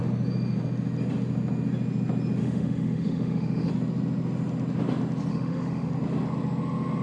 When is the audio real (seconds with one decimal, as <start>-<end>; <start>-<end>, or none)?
0.0-2.4; 3.7-5.3; 5.9-7.0